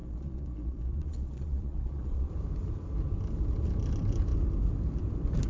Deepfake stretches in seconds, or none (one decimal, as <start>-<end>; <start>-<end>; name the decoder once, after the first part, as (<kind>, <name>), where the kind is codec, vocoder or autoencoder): 0.0-2.3 (vocoder, Vocos)